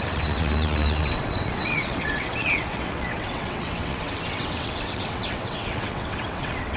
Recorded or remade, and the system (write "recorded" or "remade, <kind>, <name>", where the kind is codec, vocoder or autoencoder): remade, vocoder, WaveNeXt